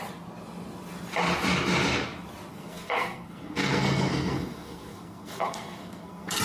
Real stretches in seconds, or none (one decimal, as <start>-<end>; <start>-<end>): 0.0-2.5